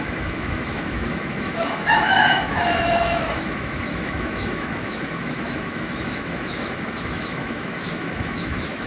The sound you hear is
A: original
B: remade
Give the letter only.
B